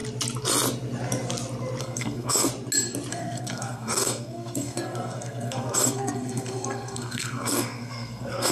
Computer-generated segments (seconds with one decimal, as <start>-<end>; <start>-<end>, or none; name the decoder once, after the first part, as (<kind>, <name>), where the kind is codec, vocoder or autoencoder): 1.8-2.5 (codec, SNAC); 3.1-8.5